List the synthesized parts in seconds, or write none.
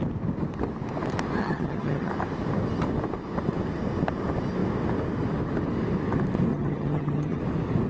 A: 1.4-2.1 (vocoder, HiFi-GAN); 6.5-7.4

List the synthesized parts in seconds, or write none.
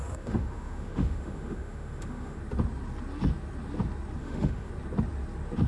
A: 0.0-2.4 (autoencoder, DAC-VAE); 4.2-4.7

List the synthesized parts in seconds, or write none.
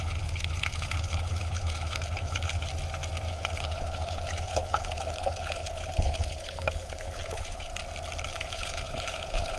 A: 0.0-2.7 (codec, HILCodec); 3.3-7.7; 8.2-9.6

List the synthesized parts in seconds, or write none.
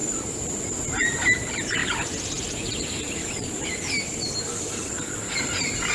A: 3.2-4.1 (vocoder, BigVGAN v2)